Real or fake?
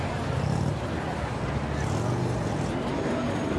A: real